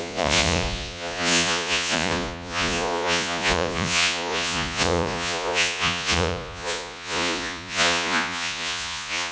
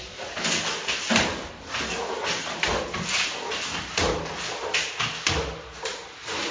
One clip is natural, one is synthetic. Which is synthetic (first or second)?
first